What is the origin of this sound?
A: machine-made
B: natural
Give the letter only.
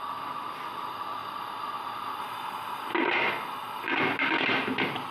B